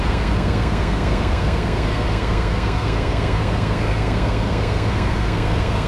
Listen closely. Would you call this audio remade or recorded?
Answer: remade